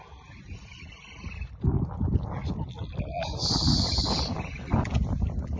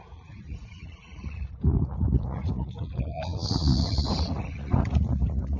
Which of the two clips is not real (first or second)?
second